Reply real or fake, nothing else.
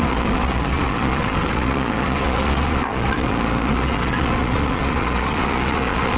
fake